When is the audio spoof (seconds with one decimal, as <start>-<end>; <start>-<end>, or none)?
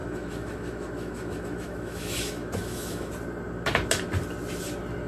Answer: 0.0-3.1